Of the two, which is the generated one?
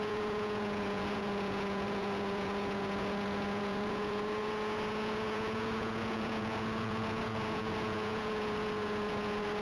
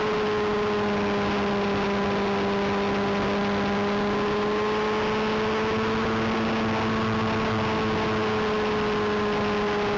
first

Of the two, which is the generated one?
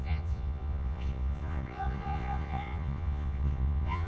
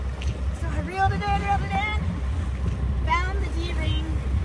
first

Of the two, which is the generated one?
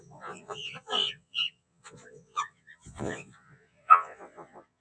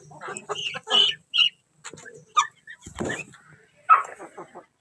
first